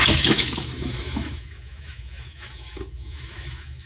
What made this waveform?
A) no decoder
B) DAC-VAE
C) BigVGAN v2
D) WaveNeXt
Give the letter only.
B